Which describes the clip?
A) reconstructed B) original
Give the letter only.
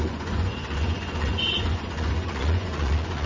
A